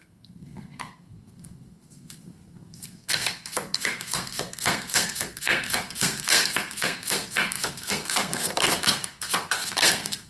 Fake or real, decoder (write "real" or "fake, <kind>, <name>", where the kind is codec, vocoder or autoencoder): fake, codec, SNAC